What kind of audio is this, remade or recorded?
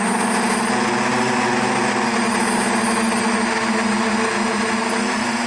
recorded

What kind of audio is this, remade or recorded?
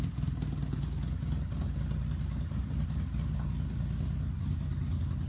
recorded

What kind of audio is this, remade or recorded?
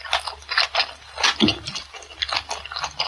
recorded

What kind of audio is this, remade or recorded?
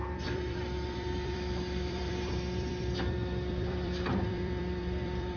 remade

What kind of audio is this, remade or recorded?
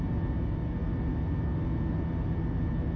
recorded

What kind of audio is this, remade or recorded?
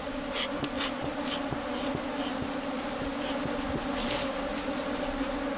recorded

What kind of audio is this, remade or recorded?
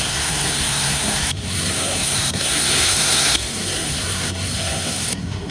remade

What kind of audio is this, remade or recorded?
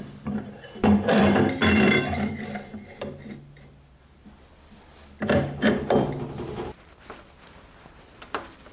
remade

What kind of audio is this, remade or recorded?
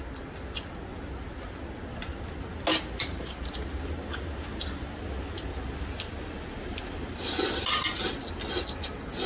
recorded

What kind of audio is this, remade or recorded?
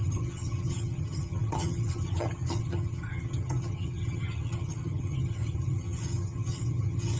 remade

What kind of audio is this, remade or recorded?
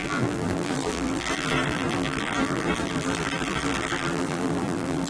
remade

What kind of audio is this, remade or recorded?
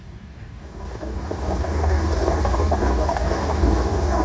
remade